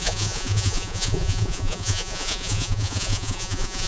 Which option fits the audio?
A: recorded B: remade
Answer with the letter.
B